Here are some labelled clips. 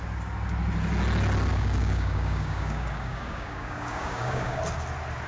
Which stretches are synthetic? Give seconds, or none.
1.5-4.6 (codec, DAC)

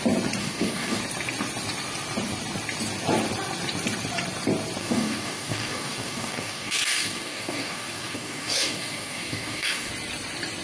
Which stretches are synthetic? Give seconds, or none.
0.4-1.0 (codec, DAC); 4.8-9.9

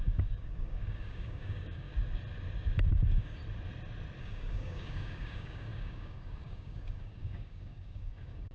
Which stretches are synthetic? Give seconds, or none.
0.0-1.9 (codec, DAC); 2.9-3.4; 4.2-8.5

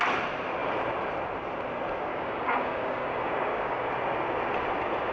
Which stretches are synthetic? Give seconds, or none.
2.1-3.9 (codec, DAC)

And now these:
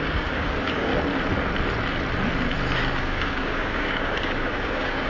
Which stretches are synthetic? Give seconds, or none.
0.0-0.9 (codec, DAC); 3.0-5.1

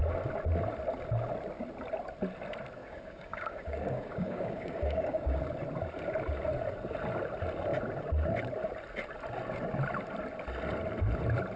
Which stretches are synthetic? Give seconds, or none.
2.8-5.4 (codec, DAC)